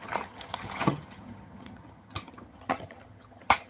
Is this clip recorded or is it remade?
remade